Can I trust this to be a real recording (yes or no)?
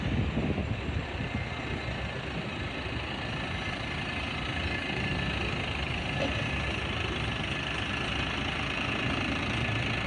yes